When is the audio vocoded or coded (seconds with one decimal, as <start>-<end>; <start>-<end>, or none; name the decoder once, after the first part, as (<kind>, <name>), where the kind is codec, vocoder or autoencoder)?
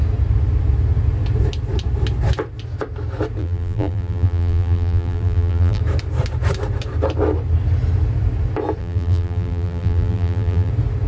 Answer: 3.4-5.8 (vocoder, BigVGAN v2); 8.8-10.7